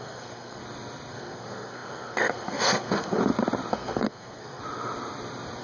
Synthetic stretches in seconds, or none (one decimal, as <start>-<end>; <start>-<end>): 0.0-0.6; 1.1-3.2; 3.7-4.6